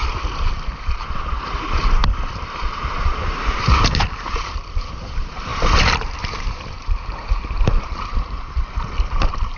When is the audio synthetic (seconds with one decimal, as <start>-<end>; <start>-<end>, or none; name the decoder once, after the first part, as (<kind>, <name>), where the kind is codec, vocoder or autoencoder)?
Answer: 0.8-9.6 (vocoder, BigVGAN v2)